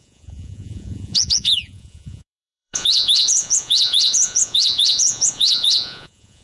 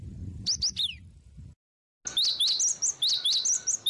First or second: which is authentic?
second